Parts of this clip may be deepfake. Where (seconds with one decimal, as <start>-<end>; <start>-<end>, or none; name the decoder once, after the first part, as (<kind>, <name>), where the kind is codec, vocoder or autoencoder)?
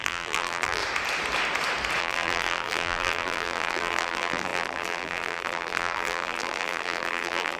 0.0-0.8 (vocoder, BigVGAN v2); 2.0-7.6